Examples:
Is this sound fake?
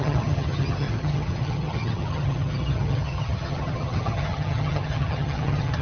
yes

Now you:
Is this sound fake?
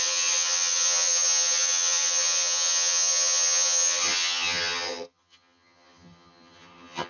yes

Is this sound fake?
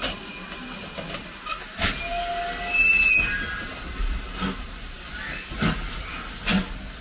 no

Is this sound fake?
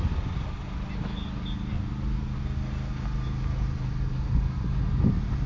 no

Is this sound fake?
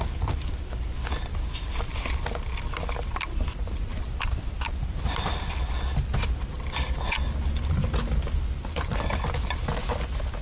no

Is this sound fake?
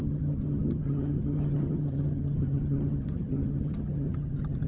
yes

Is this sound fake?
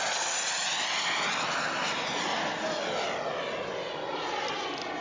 no